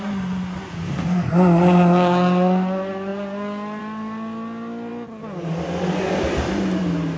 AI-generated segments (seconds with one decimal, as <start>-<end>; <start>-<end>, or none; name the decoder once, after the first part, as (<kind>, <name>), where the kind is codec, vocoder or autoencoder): none